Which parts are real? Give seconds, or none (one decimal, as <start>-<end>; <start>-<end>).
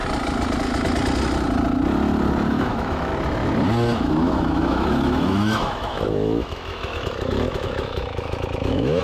0.0-2.5; 3.1-4.0